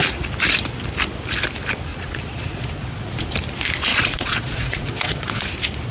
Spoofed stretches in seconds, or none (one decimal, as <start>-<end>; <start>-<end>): 1.9-3.3; 3.9-5.4